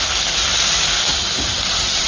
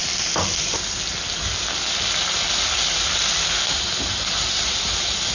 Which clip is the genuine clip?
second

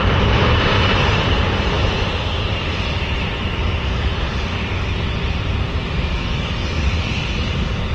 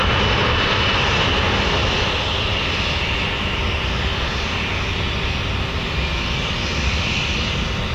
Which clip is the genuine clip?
second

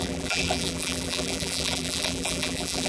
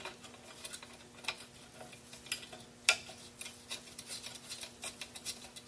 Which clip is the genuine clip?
second